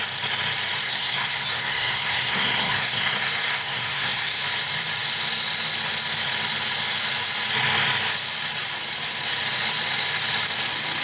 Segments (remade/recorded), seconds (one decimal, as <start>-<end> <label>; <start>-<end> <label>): 0.0-0.8 recorded; 0.8-4.4 remade; 4.4-11.0 recorded